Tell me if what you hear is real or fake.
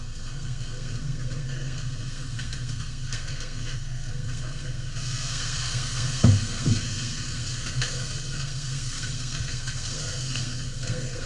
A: fake